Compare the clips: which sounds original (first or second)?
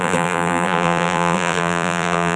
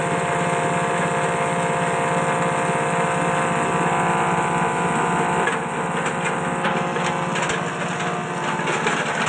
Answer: second